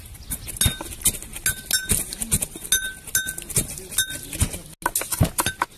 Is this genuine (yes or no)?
yes